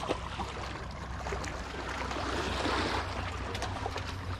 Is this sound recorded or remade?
recorded